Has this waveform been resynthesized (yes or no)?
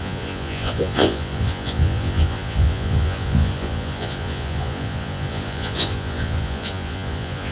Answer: yes